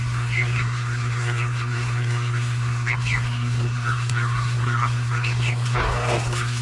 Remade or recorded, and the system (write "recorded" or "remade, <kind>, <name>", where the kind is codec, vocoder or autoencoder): remade, codec, SNAC